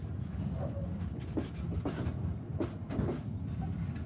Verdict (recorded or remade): recorded